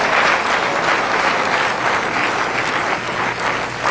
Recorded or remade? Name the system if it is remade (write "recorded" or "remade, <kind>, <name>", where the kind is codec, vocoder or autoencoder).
recorded